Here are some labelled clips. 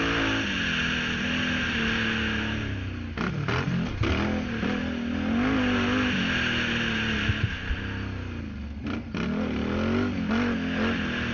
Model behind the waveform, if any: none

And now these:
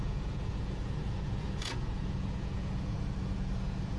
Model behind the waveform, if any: vocoder, Vocos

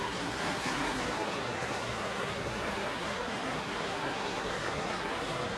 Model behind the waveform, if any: codec, SNAC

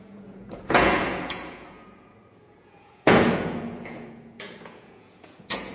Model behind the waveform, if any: vocoder, Vocos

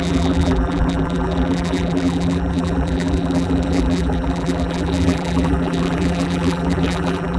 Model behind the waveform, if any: vocoder, BigVGAN v2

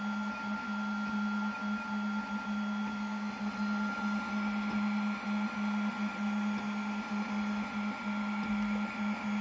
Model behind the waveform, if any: none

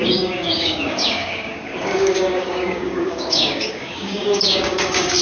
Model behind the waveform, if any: codec, DAC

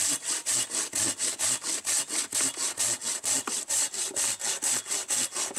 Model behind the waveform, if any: none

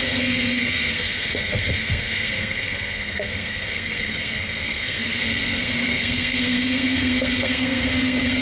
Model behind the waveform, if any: codec, SNAC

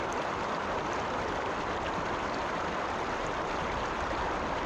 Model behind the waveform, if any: none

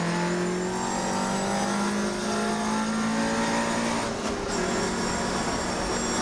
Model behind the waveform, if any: none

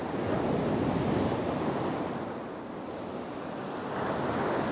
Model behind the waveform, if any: none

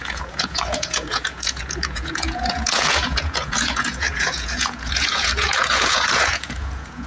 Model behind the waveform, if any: vocoder, Vocos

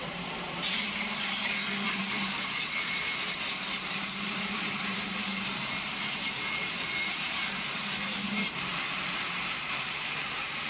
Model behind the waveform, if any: vocoder, BigVGAN v2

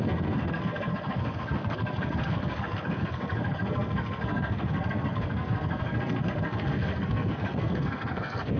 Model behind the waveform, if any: codec, SNAC